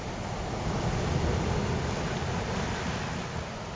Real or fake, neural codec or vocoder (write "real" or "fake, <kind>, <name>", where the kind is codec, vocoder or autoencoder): real